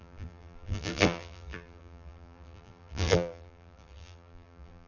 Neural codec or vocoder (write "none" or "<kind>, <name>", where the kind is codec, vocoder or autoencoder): vocoder, BigVGAN v2